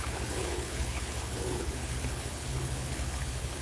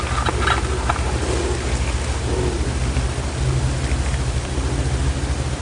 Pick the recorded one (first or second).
second